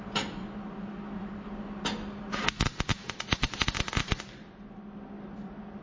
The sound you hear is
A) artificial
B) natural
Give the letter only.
B